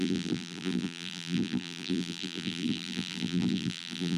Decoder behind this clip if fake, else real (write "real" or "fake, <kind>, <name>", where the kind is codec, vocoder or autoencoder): fake, vocoder, BigVGAN v2